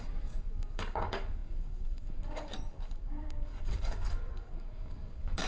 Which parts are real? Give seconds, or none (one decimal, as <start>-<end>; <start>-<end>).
none